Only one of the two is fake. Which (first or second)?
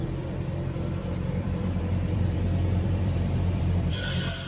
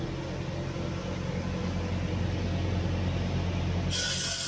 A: first